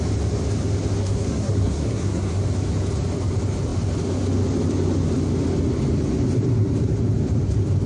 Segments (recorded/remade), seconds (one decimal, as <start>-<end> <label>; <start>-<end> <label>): 0.0-1.0 recorded; 1.0-2.4 remade; 2.4-7.9 recorded